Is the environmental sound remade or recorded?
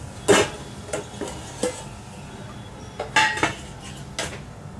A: recorded